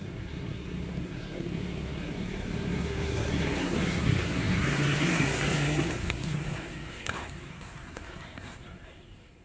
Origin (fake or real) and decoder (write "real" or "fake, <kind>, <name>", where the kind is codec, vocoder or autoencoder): fake, codec, SNAC